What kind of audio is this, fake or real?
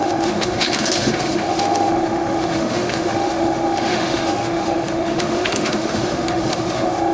fake